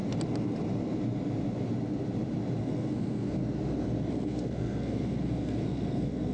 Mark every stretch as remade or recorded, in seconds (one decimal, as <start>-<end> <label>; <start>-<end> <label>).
0.0-2.6 recorded; 2.6-3.4 remade; 3.4-4.1 recorded; 4.1-6.3 remade